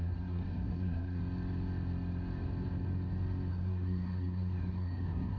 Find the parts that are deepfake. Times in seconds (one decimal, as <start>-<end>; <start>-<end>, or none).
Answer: 0.0-1.2; 3.5-5.4